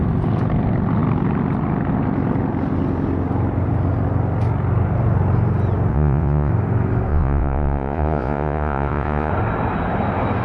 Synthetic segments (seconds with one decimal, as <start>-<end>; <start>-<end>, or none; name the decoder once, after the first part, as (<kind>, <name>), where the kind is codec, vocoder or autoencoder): 5.9-6.5 (vocoder, Vocos); 7.1-9.3